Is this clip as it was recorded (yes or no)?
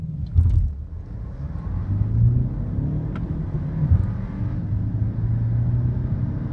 yes